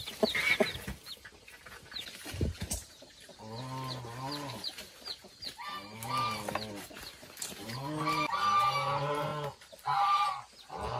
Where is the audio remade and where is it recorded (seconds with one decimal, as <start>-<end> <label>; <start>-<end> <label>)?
0.0-11.0 recorded